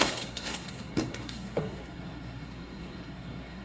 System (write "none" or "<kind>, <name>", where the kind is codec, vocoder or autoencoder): codec, SNAC